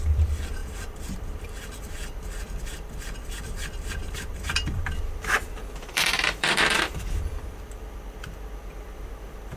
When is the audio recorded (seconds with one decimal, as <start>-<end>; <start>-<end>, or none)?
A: none